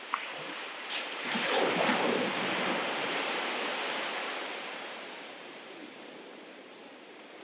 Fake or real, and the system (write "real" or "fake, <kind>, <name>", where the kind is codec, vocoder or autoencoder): fake, vocoder, BigVGAN v2